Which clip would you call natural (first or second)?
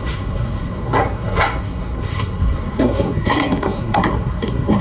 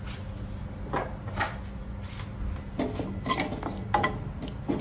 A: second